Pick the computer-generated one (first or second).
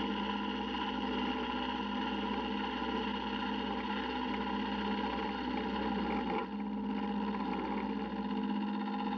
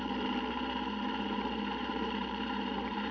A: second